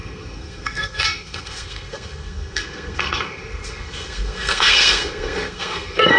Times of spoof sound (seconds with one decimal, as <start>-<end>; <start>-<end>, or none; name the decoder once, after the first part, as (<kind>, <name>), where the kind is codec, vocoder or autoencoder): 0.0-6.2 (codec, SNAC)